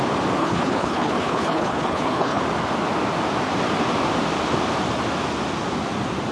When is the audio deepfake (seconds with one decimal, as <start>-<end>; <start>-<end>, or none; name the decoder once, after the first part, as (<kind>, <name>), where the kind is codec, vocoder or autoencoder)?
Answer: 0.4-2.4 (codec, HILCodec)